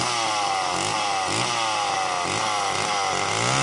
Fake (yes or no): no